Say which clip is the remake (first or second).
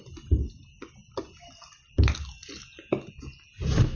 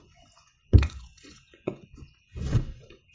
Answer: second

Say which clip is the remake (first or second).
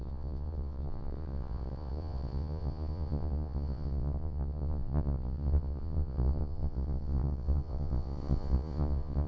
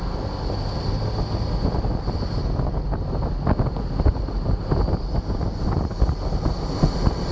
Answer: first